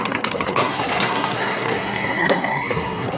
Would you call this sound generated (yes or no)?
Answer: yes